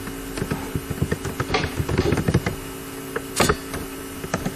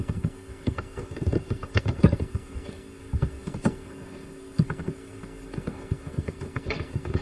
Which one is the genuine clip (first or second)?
first